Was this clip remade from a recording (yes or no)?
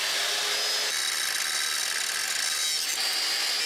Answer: no